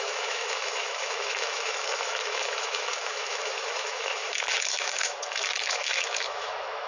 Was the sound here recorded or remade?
remade